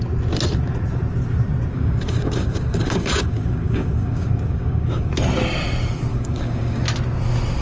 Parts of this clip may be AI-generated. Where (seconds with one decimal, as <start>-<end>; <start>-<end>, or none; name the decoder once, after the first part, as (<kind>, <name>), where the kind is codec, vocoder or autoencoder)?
1.7-5.1 (codec, DAC); 6.1-6.8